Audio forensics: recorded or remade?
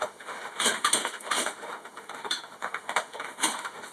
remade